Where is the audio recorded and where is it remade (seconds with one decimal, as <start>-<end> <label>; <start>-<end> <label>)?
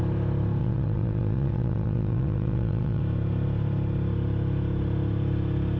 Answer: 0.0-0.6 recorded; 0.6-3.0 remade; 3.0-5.8 recorded